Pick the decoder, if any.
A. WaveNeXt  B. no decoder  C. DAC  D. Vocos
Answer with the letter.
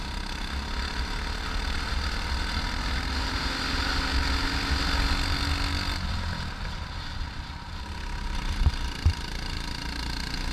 B